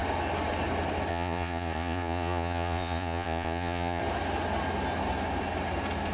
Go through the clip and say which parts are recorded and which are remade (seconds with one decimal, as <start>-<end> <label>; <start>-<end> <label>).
0.0-1.1 recorded; 1.1-4.0 remade; 4.0-6.1 recorded

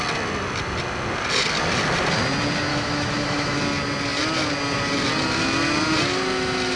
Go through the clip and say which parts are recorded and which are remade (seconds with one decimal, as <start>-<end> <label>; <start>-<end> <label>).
0.0-2.7 recorded; 2.7-3.6 remade; 3.6-6.8 recorded

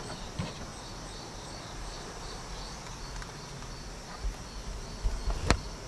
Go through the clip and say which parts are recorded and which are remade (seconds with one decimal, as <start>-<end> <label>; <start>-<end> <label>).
0.0-5.9 recorded